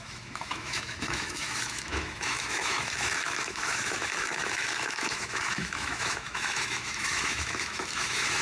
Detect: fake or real fake